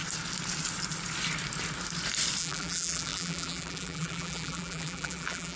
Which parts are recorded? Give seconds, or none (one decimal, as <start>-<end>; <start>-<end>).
0.0-2.4